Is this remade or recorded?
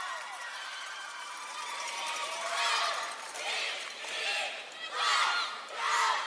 remade